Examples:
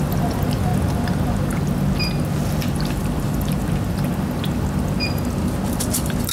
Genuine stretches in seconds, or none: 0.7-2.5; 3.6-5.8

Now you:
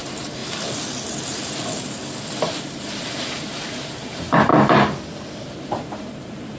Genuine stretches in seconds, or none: 0.4-2.6; 4.5-5.3